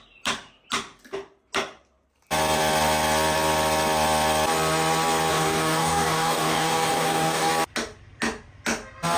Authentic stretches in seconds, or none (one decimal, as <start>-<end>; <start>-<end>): 0.0-5.3; 7.5-9.2